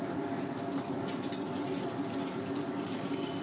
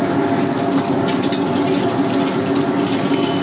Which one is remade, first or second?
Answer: first